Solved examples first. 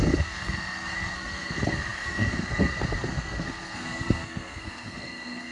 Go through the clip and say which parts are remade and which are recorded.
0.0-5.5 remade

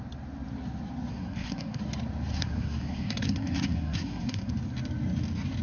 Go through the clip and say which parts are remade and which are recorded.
0.0-1.1 recorded; 1.1-1.8 remade; 1.8-2.3 recorded; 2.3-4.5 remade; 4.5-5.6 recorded

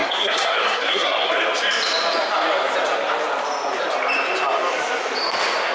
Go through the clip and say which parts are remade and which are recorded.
0.0-1.3 remade; 1.3-5.7 recorded

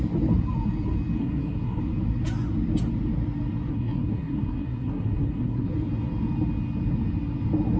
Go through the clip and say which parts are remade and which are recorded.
0.0-1.2 recorded; 1.2-1.8 remade; 1.8-3.7 recorded; 3.7-5.7 remade; 5.7-7.8 recorded

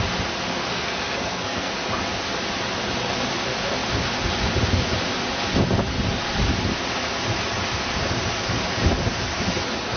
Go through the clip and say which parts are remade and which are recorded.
0.0-0.6 recorded; 0.6-1.7 remade; 1.7-10.0 recorded

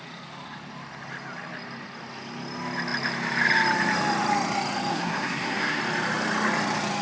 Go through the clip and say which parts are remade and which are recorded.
0.0-4.9 recorded; 4.9-5.8 remade; 5.8-7.0 recorded